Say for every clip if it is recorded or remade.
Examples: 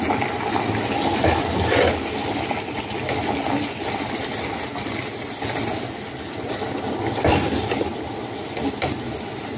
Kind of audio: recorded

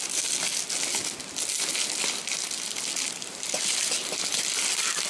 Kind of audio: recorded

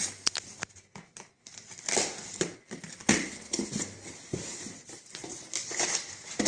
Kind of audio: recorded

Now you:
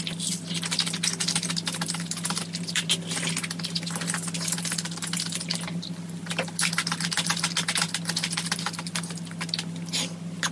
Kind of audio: recorded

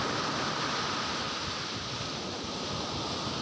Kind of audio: recorded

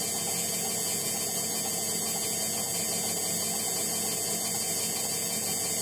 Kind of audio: recorded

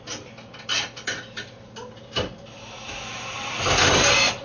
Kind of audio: recorded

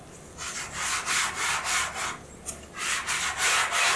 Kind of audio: recorded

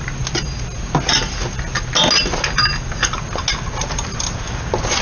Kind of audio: recorded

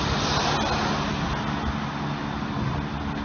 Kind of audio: recorded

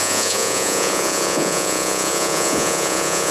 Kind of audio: remade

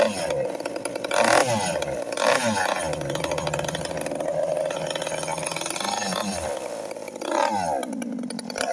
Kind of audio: recorded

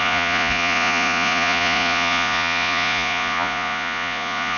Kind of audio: remade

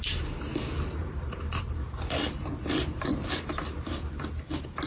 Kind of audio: recorded